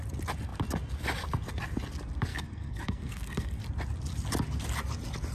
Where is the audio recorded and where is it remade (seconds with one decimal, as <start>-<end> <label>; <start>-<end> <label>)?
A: 0.0-2.3 recorded; 2.3-3.6 remade; 3.6-5.3 recorded